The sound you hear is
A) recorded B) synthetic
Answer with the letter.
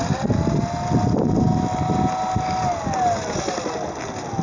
A